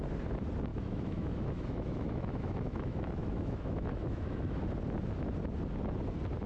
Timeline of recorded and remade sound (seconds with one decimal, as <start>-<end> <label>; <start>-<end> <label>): 0.0-0.7 recorded; 0.7-4.6 remade; 4.6-6.5 recorded